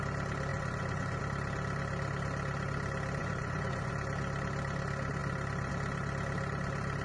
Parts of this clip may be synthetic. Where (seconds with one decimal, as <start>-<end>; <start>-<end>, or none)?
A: 0.5-1.2; 3.2-3.9